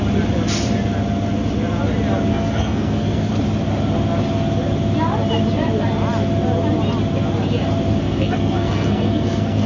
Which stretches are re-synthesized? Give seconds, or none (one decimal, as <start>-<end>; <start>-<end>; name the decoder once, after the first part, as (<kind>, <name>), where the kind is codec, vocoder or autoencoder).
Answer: 2.3-3.3 (codec, SNAC); 8.0-9.7